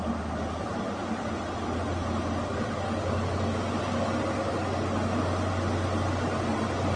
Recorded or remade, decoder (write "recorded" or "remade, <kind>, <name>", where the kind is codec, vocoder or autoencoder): recorded